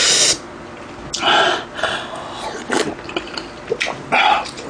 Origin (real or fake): real